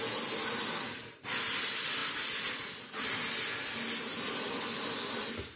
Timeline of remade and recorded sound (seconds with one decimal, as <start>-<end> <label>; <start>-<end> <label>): 0.0-5.6 recorded